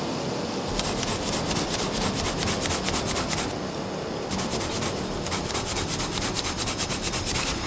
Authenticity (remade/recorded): recorded